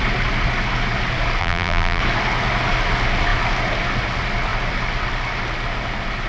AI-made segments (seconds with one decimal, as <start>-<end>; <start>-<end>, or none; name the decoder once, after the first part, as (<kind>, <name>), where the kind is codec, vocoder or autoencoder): 1.4-2.0 (vocoder, BigVGAN v2)